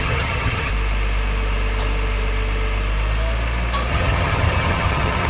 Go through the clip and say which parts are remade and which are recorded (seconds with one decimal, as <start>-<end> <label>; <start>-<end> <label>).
0.0-0.7 remade; 0.7-3.9 recorded; 3.9-5.3 remade